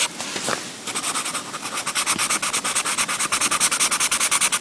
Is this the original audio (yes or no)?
yes